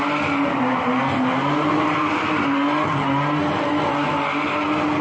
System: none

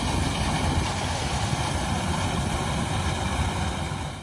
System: vocoder, BigVGAN v2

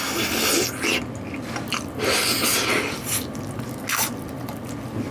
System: none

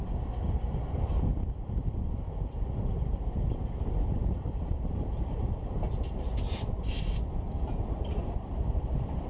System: none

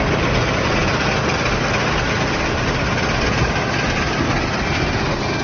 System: none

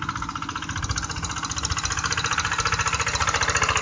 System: none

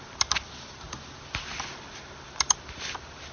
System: none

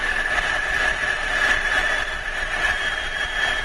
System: vocoder, BigVGAN v2